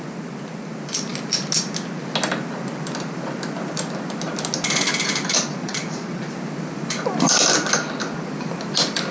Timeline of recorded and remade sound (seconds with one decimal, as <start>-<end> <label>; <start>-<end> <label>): 0.0-5.6 recorded; 5.6-6.3 remade; 6.3-9.1 recorded